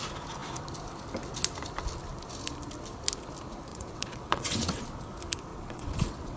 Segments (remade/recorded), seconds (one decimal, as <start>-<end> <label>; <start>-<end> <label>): 0.0-3.7 recorded; 3.7-4.8 remade; 4.8-5.5 recorded; 5.5-6.4 remade